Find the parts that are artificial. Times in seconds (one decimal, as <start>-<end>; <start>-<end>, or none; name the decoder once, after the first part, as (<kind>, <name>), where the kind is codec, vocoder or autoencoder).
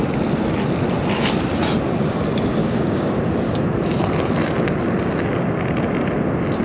2.6-3.2 (codec, DAC)